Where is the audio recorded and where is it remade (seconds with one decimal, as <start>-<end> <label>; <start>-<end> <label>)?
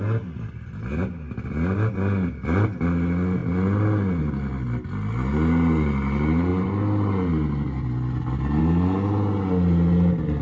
0.0-10.4 recorded